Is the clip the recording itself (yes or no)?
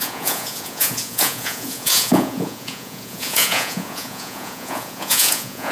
no